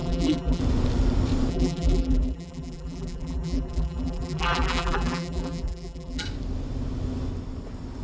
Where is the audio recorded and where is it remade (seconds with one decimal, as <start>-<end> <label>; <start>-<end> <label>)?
0.0-0.6 remade; 0.6-1.5 recorded; 1.5-6.2 remade; 6.2-8.0 recorded